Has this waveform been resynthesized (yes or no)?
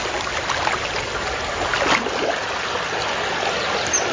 no